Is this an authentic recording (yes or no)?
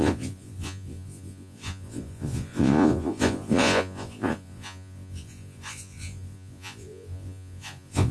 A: no